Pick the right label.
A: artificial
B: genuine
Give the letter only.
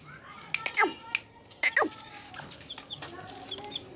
B